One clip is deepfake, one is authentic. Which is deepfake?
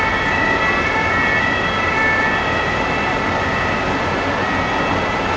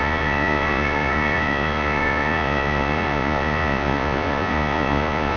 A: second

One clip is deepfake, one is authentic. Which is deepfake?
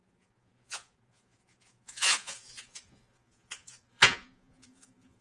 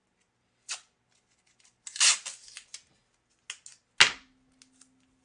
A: first